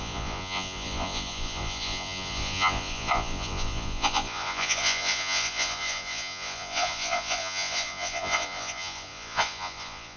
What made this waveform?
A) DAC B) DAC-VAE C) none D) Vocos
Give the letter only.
D